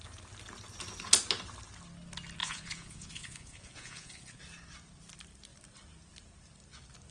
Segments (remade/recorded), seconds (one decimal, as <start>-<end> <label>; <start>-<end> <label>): 0.0-2.4 recorded; 2.4-4.4 remade; 4.4-7.1 recorded